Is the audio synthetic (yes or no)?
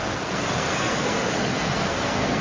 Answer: yes